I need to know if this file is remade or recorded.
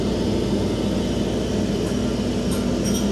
recorded